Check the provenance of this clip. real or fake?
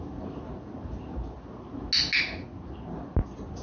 real